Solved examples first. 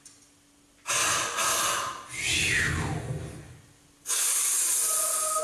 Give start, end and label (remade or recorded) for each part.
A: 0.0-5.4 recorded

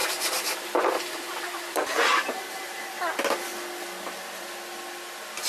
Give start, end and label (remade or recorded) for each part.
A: 0.0-3.0 remade; 3.0-5.5 recorded

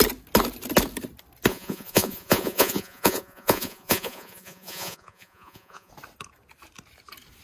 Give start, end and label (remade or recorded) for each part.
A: 0.0-1.5 recorded; 1.5-5.9 remade; 5.9-7.4 recorded

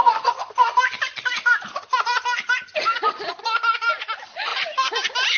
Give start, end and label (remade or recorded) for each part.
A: 0.0-0.8 remade; 0.8-5.4 recorded